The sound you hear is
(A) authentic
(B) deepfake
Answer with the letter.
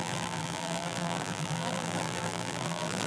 B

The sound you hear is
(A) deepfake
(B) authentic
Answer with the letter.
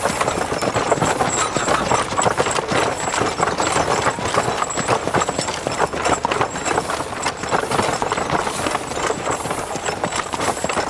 B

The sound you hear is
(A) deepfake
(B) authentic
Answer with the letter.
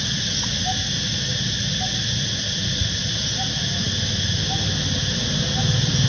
B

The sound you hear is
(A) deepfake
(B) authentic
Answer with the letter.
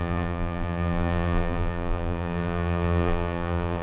A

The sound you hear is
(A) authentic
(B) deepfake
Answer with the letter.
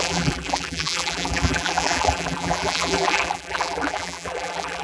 B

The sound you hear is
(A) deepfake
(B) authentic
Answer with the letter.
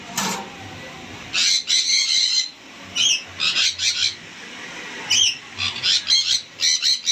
B